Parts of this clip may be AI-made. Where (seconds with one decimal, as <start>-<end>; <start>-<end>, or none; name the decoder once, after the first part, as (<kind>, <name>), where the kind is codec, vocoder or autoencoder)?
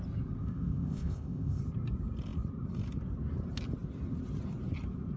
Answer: 0.4-1.6 (codec, ZipCodec)